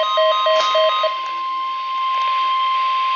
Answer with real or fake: real